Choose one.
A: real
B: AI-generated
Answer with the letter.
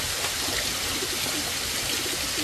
A